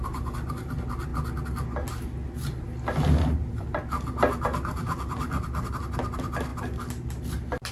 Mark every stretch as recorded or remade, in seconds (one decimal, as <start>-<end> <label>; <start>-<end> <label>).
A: 0.0-7.7 recorded